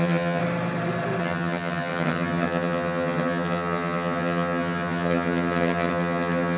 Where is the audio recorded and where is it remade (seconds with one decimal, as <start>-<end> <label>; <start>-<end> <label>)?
0.0-0.4 remade; 0.4-1.2 recorded; 1.2-6.6 remade